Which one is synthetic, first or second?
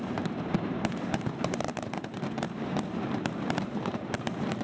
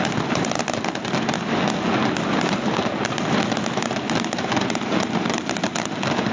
first